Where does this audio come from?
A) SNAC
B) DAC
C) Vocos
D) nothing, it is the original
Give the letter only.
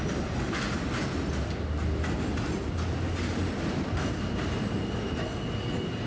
D